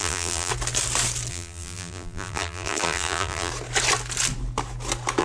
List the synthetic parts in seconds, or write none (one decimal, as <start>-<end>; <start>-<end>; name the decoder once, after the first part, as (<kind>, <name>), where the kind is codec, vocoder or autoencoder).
0.0-0.5 (vocoder, BigVGAN v2); 1.3-3.5